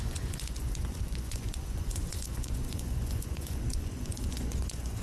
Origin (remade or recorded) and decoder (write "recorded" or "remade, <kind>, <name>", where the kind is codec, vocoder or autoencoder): remade, vocoder, Vocos